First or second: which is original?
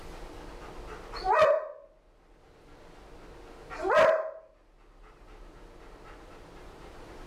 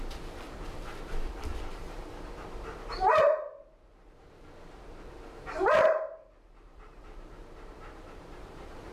first